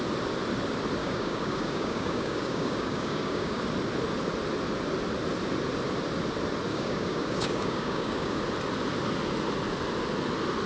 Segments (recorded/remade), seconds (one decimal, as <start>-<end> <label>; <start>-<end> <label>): 0.0-1.0 recorded; 1.0-3.6 remade; 3.6-6.7 recorded; 6.7-8.4 remade; 8.4-10.7 recorded